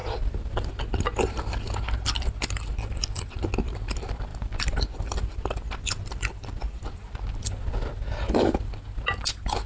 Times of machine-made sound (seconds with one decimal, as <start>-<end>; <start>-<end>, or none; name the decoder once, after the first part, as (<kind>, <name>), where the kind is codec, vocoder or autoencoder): 0.0-0.7 (vocoder, BigVGAN v2); 4.3-8.7